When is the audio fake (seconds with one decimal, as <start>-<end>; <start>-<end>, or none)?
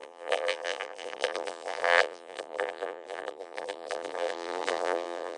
0.0-5.4